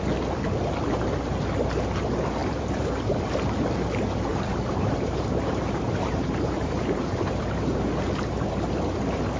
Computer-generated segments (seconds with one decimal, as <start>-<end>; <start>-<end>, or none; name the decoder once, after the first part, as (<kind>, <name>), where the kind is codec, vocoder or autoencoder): 2.4-3.2 (vocoder, BigVGAN v2); 4.3-8.5